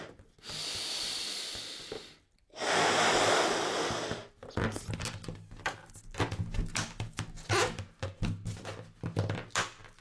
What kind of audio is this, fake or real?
real